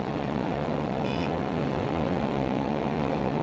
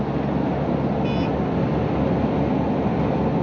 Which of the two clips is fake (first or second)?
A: first